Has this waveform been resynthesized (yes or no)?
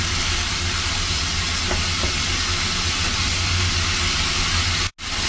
no